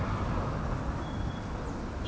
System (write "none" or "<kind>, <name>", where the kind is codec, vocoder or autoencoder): none